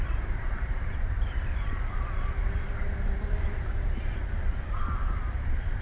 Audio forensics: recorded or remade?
remade